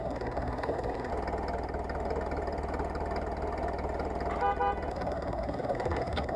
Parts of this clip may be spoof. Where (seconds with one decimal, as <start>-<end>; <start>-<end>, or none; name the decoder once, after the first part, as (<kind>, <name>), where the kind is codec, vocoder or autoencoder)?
0.0-1.1 (codec, SNAC); 4.9-6.4